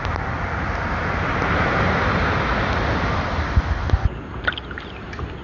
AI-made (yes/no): no